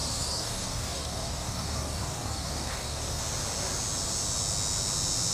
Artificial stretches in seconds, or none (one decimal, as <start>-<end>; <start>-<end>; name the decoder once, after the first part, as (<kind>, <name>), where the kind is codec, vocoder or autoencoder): 0.0-3.2 (codec, DAC)